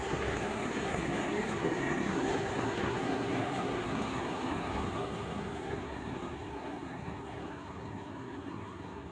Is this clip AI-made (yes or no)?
yes